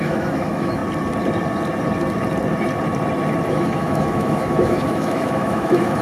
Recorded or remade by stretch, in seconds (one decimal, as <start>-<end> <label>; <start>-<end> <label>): 0.0-0.8 remade; 0.8-3.5 recorded; 3.5-6.0 remade